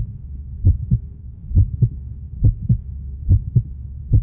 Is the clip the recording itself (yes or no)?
no